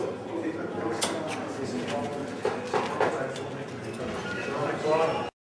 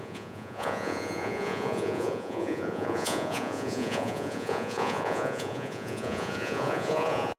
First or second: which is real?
first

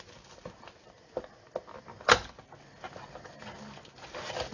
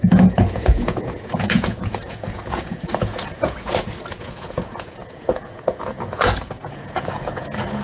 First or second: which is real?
first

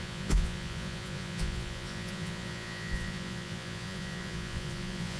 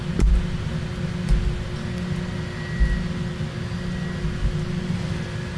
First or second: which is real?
second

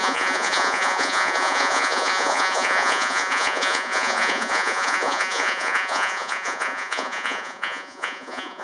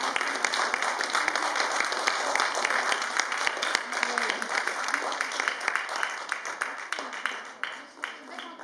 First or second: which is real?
second